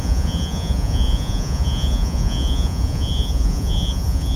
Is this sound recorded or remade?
remade